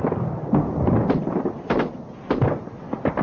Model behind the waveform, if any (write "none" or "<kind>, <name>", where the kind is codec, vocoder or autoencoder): none